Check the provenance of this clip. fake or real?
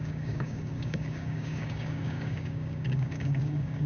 fake